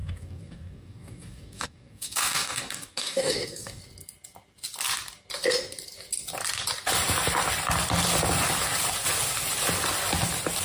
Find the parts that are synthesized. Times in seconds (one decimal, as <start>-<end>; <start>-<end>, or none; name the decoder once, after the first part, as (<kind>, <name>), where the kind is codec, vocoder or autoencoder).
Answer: 0.0-3.8 (codec, DAC)